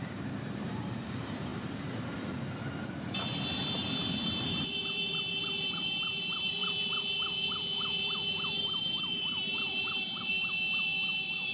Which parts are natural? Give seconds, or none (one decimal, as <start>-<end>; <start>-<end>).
none